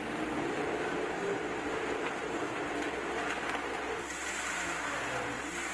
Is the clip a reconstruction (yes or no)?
no